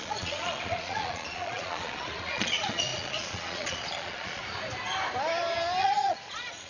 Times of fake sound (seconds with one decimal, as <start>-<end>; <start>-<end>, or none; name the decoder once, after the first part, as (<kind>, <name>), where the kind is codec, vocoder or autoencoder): 0.0-4.4 (vocoder, Vocos); 5.8-6.7